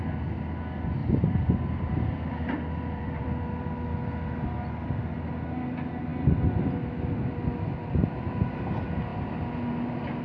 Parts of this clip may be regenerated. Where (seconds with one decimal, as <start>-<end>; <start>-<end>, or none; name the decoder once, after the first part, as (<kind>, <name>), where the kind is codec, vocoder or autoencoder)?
1.0-3.7 (vocoder, BigVGAN v2)